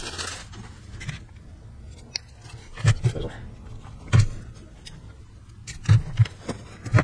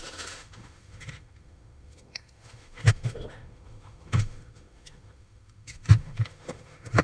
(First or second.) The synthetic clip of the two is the second